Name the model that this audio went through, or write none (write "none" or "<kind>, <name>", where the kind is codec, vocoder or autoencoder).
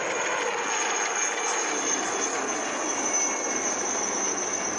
none